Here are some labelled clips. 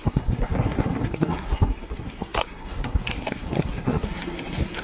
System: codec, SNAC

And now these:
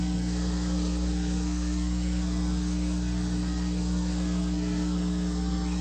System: codec, SNAC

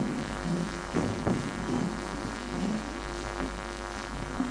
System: codec, SNAC